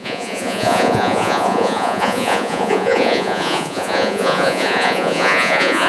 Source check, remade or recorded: remade